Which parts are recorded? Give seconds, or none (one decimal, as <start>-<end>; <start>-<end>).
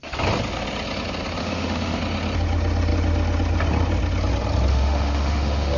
0.0-1.4; 2.0-4.7